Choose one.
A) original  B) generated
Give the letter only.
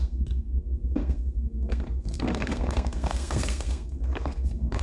B